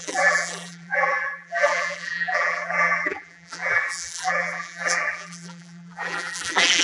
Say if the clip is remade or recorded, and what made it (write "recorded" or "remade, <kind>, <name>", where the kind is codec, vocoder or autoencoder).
remade, vocoder, BigVGAN v2